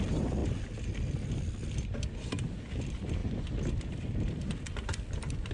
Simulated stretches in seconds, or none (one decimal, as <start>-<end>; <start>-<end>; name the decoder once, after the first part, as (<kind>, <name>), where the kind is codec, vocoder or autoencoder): 0.0-0.4 (vocoder, BigVGAN v2); 2.8-3.2; 3.7-5.5